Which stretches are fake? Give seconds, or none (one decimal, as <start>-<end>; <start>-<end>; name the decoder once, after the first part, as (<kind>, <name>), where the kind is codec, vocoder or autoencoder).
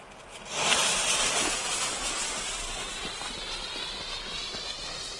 none